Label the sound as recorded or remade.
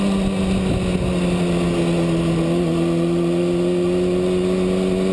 recorded